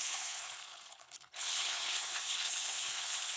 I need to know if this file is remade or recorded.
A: remade